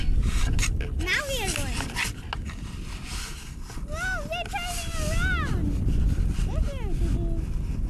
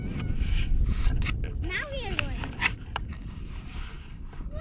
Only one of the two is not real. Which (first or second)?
second